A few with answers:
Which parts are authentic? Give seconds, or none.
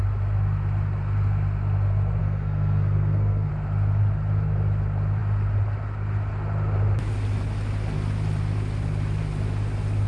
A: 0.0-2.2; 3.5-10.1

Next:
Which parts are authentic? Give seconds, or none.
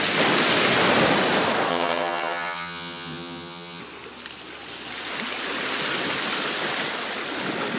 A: 0.0-1.7; 3.8-7.8